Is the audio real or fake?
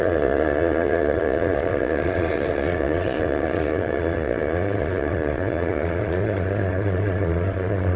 fake